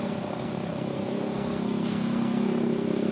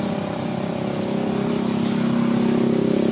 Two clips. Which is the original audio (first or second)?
second